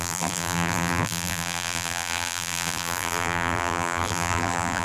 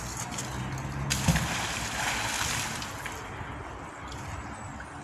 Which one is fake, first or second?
first